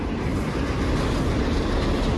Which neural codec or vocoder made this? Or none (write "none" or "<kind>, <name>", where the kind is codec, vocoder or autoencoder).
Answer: none